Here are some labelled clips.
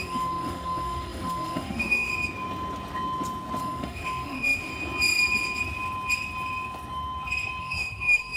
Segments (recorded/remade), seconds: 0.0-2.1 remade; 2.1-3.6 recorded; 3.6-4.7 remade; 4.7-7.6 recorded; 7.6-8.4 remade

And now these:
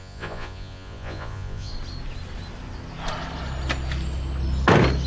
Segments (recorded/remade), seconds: 0.0-1.7 remade; 1.7-5.1 recorded

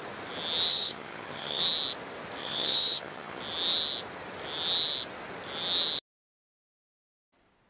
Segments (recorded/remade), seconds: 0.0-0.7 recorded; 0.7-1.6 remade; 1.6-2.4 recorded; 2.4-3.4 remade; 3.4-7.7 recorded